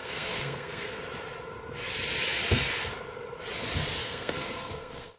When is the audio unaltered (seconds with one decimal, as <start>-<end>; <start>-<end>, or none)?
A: 1.0-4.0